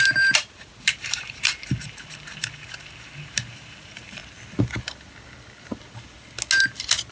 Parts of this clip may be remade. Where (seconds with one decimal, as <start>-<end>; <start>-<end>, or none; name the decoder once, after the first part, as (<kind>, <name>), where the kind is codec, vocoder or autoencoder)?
0.0-4.2 (vocoder, BigVGAN v2)